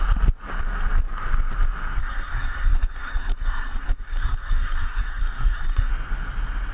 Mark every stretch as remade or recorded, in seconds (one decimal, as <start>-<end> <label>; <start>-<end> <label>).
0.0-2.0 recorded; 2.0-5.9 remade; 5.9-6.7 recorded

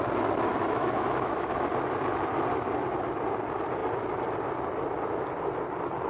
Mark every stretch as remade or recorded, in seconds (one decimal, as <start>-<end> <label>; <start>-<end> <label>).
0.0-0.5 recorded; 0.5-1.7 remade; 1.7-6.1 recorded

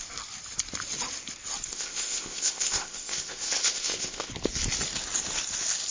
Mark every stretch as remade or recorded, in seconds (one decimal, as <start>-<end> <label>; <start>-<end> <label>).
0.0-1.7 recorded; 1.7-4.3 remade; 4.3-5.9 recorded

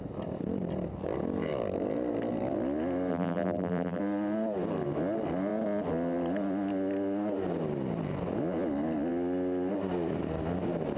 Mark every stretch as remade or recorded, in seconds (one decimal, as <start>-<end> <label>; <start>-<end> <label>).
0.0-3.1 recorded; 3.1-4.0 remade; 4.0-11.0 recorded

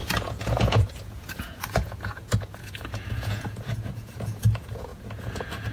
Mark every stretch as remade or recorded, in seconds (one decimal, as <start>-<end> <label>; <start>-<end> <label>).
0.0-5.7 remade

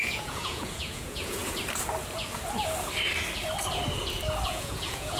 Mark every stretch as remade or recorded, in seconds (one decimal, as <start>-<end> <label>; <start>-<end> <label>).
0.0-1.4 remade; 1.4-4.5 recorded; 4.5-5.2 remade

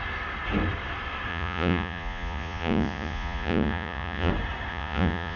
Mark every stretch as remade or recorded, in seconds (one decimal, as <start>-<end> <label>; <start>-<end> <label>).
0.0-1.3 recorded; 1.3-4.3 remade; 4.3-4.7 recorded; 4.7-5.4 remade